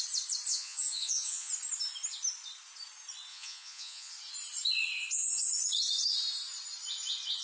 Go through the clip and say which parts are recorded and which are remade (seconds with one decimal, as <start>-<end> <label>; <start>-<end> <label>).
0.0-0.5 recorded; 0.5-1.5 remade; 1.5-3.3 recorded; 3.3-4.1 remade; 4.1-7.4 recorded